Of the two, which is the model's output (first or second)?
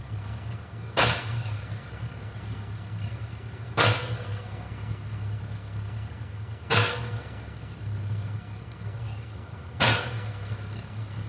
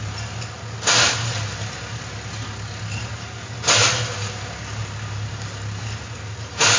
first